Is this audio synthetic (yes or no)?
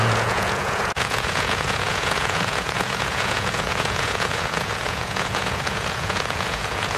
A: yes